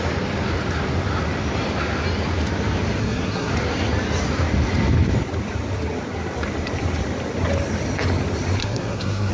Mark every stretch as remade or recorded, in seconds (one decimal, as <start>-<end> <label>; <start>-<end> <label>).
0.0-3.0 recorded; 3.0-3.5 remade; 3.5-8.6 recorded; 8.6-9.3 remade